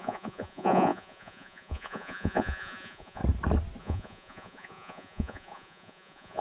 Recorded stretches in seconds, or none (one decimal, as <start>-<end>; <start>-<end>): 3.2-3.8